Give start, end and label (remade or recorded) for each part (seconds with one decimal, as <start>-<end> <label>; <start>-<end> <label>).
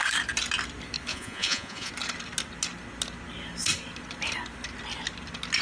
0.0-1.1 recorded; 1.1-1.9 remade; 1.9-5.6 recorded